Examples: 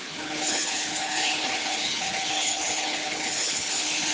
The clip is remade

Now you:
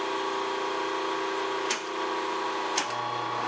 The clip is recorded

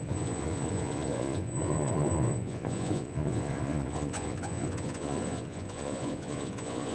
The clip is remade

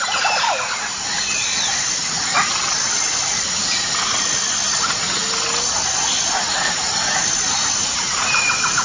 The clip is recorded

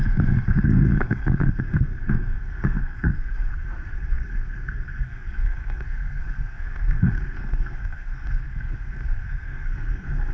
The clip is remade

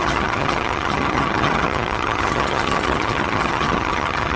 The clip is remade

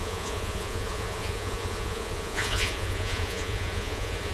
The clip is remade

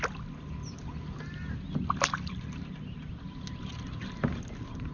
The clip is recorded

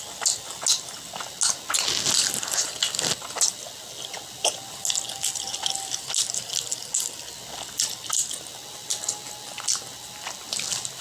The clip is recorded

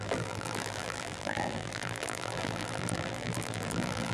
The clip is remade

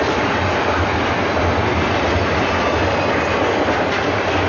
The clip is recorded